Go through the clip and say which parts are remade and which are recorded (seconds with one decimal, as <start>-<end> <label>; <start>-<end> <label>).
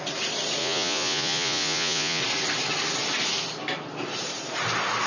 0.0-0.6 recorded; 0.6-2.2 remade; 2.2-5.1 recorded